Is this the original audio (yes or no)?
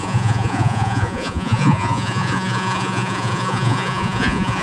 no